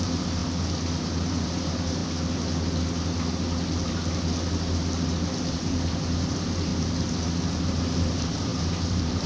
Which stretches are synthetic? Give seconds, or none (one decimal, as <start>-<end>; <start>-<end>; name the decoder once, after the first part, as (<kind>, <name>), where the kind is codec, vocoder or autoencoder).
0.0-0.4 (vocoder, BigVGAN v2); 1.0-2.0; 5.5-6.7; 7.5-9.3